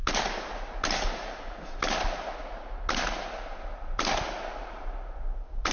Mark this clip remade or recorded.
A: recorded